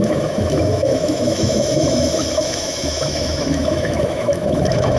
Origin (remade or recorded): remade